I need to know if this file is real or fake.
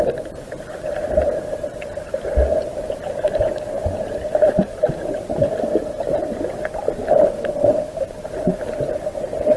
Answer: real